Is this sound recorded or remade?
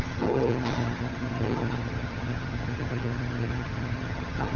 remade